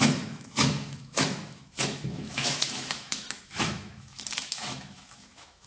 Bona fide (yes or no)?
no